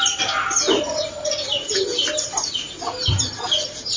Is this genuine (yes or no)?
yes